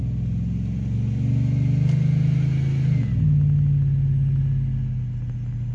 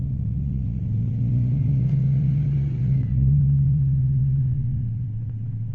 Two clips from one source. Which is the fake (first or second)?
second